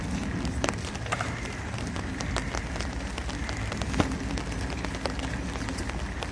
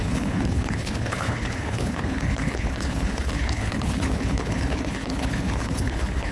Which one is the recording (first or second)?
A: first